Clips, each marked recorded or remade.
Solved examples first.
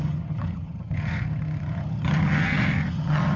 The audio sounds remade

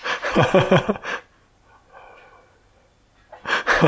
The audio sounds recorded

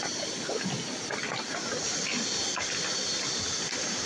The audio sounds recorded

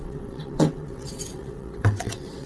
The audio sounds remade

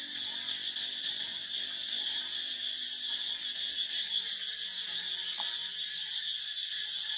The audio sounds recorded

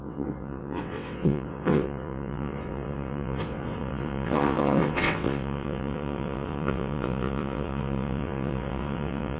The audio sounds remade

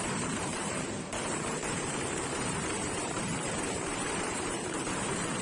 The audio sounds remade